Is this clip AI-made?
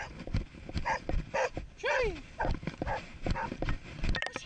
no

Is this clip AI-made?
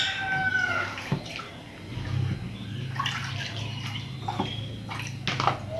no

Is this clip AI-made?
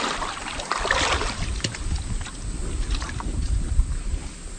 no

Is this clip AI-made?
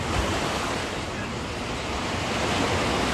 no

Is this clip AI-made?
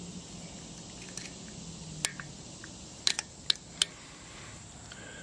no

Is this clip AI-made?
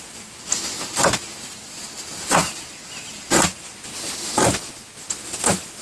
no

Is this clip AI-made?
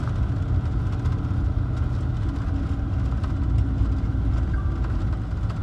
no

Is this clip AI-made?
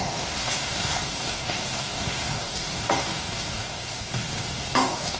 yes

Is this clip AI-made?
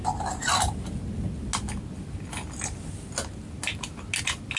no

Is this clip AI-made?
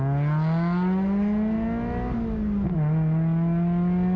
no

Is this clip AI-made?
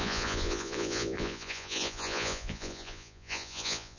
yes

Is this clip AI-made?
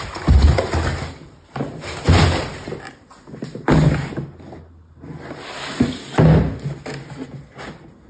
no